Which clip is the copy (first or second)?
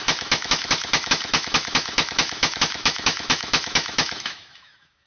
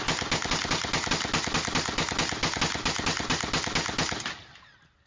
first